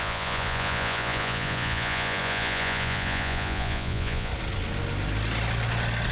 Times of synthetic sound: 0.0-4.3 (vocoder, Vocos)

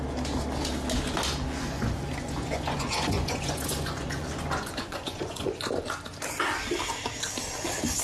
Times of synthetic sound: 1.6-5.6 (vocoder, Vocos)

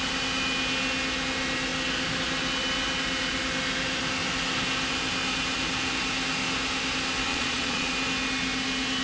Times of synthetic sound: 7.3-7.9 (vocoder, Vocos)

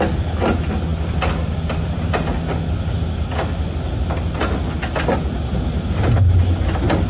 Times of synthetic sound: none

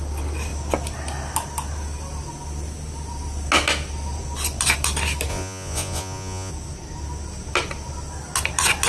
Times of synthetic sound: 5.3-6.5 (vocoder, Vocos)

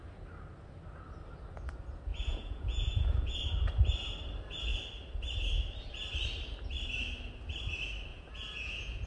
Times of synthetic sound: 2.1-3.4 (vocoder, Vocos); 8.1-9.1